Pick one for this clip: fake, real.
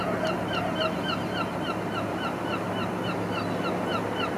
real